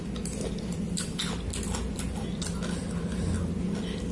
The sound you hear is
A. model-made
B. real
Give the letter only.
B